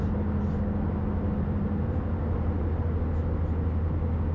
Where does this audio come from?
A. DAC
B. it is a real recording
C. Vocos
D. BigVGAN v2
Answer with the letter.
B